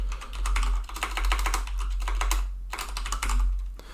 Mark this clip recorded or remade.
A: recorded